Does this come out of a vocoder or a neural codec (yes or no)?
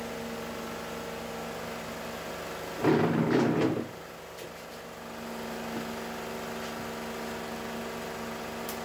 no